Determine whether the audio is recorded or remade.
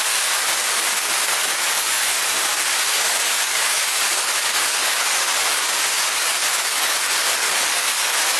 remade